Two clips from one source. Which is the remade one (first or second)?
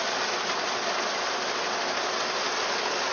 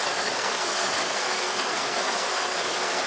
second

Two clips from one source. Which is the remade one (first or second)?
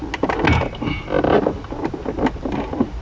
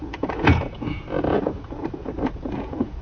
second